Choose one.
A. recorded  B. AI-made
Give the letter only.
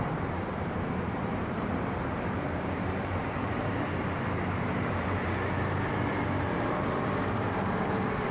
B